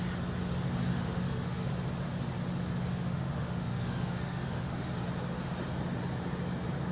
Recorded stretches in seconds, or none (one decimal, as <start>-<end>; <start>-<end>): 0.0-0.9; 1.7-2.9; 4.9-6.9